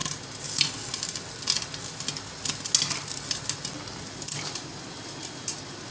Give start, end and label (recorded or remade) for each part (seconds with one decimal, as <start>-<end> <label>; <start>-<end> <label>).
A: 0.0-5.9 recorded